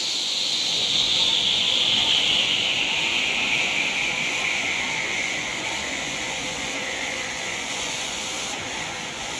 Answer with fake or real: fake